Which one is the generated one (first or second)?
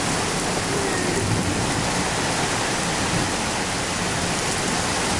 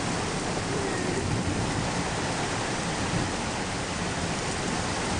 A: second